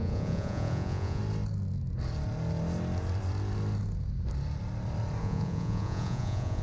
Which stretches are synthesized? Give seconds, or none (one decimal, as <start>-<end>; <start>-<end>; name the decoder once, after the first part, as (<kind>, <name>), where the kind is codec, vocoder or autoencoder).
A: 0.0-1.2 (vocoder, Vocos); 5.2-6.6